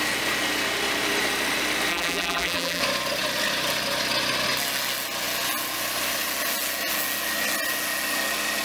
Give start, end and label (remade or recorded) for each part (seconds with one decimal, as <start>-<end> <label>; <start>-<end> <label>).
0.0-1.9 recorded; 1.9-2.8 remade; 2.8-8.6 recorded

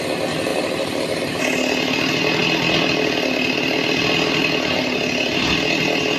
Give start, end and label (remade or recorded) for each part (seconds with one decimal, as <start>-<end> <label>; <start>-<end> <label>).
0.0-0.5 recorded; 0.5-1.4 remade; 1.4-6.2 recorded

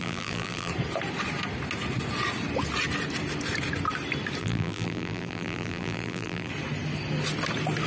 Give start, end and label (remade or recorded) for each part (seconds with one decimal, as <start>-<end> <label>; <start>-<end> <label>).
0.0-0.7 remade; 0.7-4.4 recorded; 4.4-6.5 remade; 6.5-7.9 recorded

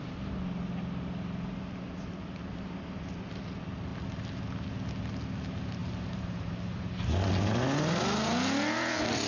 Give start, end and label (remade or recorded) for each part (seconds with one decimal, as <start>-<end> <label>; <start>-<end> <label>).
0.0-5.8 recorded; 5.8-6.8 remade; 6.8-9.3 recorded